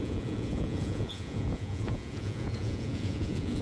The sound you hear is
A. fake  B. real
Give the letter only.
A